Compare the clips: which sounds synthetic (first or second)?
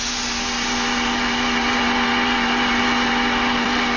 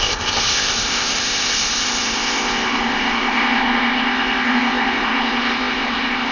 second